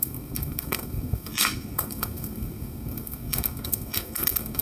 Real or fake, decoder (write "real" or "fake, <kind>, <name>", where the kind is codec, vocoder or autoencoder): fake, codec, SNAC